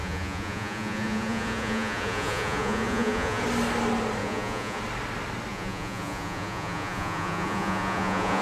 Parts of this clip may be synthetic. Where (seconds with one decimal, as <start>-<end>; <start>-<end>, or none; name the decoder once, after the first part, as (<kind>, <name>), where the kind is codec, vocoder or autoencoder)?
0.0-3.4 (vocoder, Vocos); 4.2-4.8; 5.5-8.4